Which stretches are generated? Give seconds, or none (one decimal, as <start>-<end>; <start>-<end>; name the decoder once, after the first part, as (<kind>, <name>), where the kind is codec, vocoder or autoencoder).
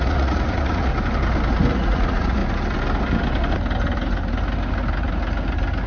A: 0.0-0.9 (vocoder, Vocos); 1.7-2.4